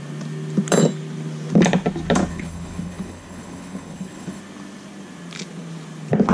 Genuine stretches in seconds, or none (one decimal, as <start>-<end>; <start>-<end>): 0.0-2.3; 4.4-6.3